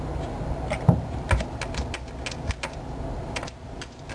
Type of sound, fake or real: real